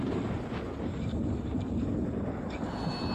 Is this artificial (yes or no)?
no